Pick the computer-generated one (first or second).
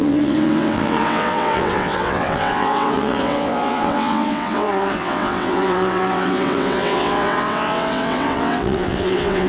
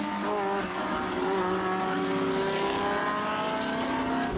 first